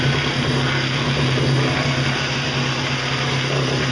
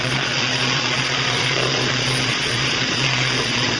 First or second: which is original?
first